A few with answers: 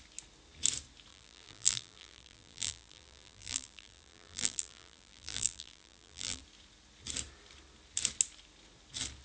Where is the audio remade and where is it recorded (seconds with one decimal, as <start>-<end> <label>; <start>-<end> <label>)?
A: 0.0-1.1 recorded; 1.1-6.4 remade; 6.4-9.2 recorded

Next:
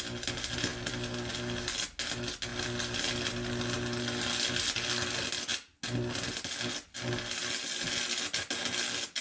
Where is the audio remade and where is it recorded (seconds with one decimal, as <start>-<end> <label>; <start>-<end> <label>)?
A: 0.0-9.2 recorded

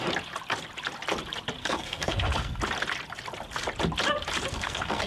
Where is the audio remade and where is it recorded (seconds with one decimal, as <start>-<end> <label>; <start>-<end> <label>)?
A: 0.0-1.6 recorded; 1.6-2.6 remade; 2.6-4.5 recorded; 4.5-5.1 remade

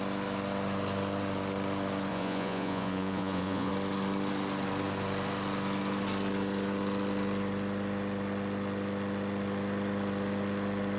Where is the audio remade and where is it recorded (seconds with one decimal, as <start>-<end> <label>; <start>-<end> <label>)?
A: 0.0-2.1 recorded; 2.1-3.7 remade; 3.7-11.0 recorded